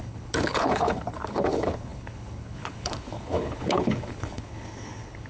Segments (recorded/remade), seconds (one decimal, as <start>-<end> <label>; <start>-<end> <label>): 0.0-5.3 remade